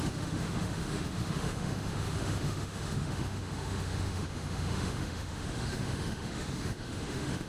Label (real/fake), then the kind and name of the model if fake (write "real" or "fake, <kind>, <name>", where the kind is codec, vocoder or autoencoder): fake, autoencoder, DAC-VAE